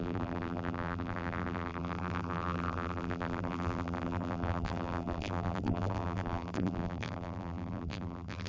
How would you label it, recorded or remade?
remade